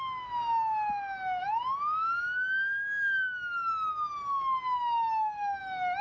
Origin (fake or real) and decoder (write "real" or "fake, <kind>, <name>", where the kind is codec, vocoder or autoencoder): real